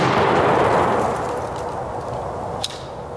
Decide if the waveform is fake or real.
real